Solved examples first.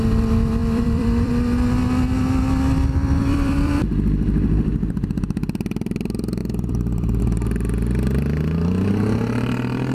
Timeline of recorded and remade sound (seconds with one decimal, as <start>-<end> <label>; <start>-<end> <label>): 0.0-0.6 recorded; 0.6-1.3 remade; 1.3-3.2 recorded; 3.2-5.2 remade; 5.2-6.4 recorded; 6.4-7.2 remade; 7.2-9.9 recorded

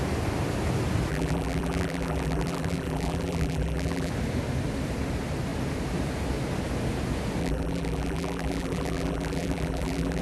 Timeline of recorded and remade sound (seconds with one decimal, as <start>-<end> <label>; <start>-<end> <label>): 0.0-1.1 recorded; 1.1-4.1 remade; 4.1-7.4 recorded; 7.4-10.2 remade

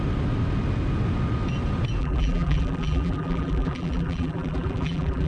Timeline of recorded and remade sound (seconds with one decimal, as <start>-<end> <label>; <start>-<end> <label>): 0.0-2.0 recorded; 2.0-5.3 remade

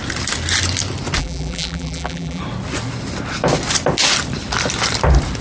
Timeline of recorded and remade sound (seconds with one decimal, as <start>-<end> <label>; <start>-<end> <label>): 0.0-1.2 recorded; 1.2-2.4 remade; 2.4-5.4 recorded

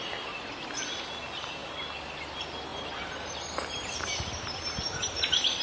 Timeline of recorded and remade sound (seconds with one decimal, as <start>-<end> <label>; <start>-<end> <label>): 0.0-2.7 recorded; 2.7-5.6 remade